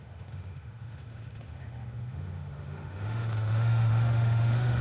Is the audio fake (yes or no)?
yes